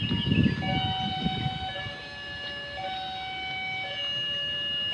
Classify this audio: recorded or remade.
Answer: recorded